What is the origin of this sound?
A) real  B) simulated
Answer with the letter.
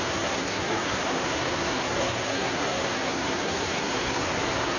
B